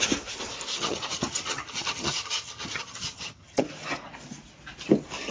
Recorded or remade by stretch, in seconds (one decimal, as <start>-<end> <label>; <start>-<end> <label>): 0.0-0.7 recorded; 0.7-3.6 remade; 3.6-5.3 recorded